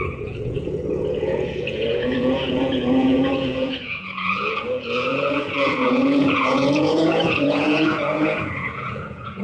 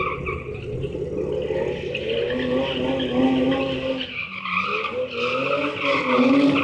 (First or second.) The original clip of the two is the second